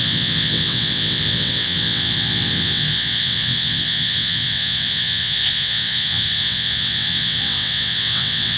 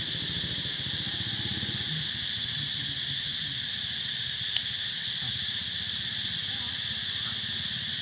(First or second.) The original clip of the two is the second